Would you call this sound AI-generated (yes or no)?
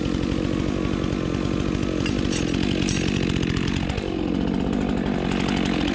no